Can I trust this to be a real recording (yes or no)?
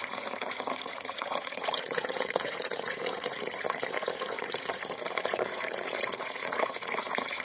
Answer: no